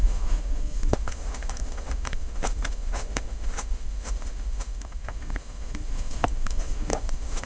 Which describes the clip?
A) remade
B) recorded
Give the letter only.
A